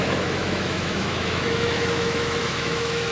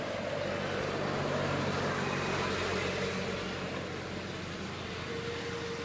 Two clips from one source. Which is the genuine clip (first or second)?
second